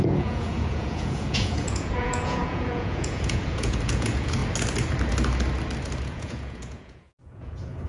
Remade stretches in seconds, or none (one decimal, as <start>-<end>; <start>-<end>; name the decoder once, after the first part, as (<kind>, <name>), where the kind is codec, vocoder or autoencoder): 0.0-4.4 (vocoder, Vocos); 6.0-7.9